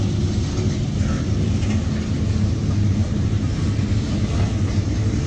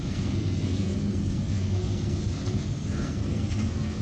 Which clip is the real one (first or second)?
first